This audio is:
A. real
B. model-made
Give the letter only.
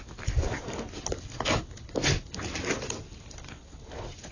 A